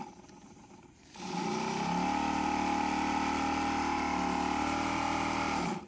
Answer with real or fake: real